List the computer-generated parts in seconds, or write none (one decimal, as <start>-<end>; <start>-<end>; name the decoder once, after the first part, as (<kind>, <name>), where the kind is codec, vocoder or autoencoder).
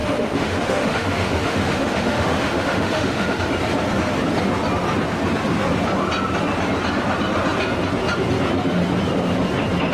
0.0-3.4 (autoencoder, DAC-VAE)